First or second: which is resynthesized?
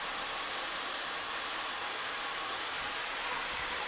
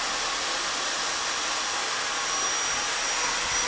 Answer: first